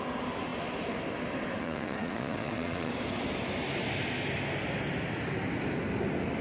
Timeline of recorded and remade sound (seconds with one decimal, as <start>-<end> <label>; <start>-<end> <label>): 0.0-1.6 recorded; 1.6-2.9 remade; 2.9-6.4 recorded